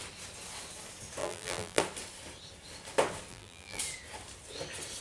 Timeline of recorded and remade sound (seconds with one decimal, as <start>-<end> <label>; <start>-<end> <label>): 0.0-1.2 recorded; 1.2-1.8 remade; 1.8-3.3 recorded; 3.3-3.8 remade; 3.8-5.0 recorded